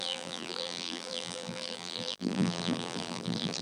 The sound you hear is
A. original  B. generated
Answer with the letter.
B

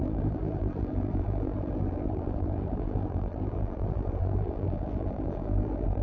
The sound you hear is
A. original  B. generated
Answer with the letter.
B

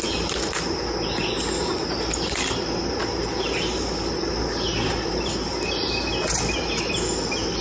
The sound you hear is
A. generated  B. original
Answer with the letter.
B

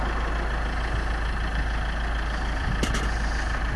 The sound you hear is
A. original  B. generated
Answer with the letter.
A